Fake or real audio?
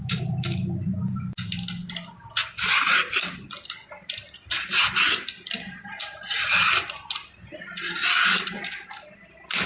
real